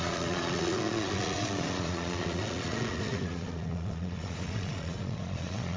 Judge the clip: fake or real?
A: fake